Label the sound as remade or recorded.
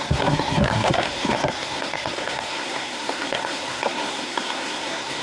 remade